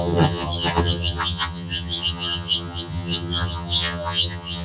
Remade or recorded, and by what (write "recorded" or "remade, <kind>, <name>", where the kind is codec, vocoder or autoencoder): remade, vocoder, HiFi-GAN